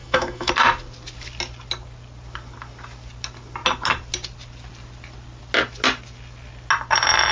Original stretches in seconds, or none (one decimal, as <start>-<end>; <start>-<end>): 0.5-7.3